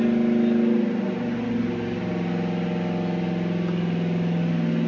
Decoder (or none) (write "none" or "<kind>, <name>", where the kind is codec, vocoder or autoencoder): none